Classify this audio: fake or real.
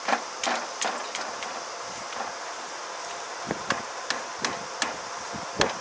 real